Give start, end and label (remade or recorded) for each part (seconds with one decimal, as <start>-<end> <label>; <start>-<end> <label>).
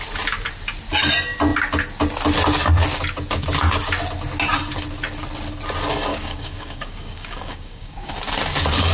0.0-6.1 recorded; 6.1-8.1 remade; 8.1-8.9 recorded